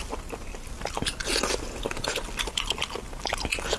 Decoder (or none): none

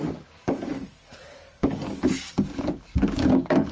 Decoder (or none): codec, DAC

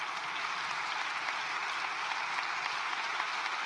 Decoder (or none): none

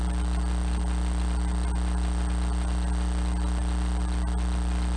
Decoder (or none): none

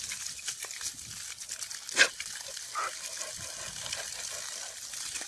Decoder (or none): none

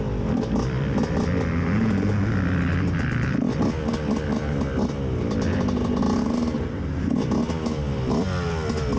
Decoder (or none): none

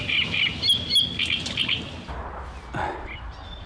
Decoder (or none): none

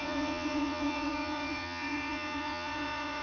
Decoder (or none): vocoder, Vocos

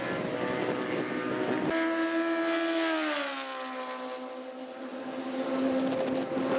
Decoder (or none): none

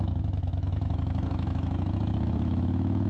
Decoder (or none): autoencoder, DAC-VAE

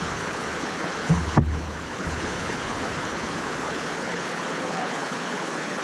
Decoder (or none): codec, HILCodec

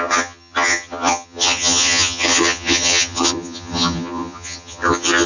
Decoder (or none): vocoder, HiFi-GAN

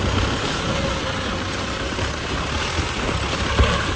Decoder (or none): none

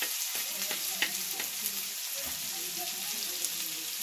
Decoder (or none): none